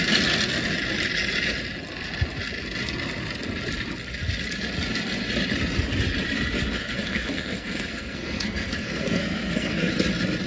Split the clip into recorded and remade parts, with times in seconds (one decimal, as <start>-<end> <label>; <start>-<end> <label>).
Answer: 0.0-6.8 recorded; 6.8-9.9 remade; 9.9-10.5 recorded